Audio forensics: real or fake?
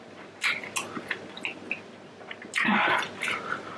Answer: real